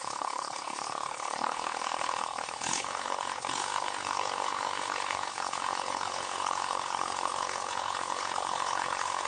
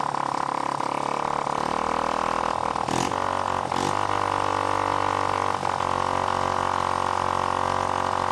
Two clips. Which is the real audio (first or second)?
second